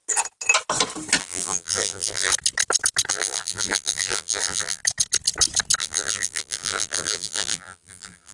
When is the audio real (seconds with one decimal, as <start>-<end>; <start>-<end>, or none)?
0.0-1.2; 2.3-3.1; 4.8-5.8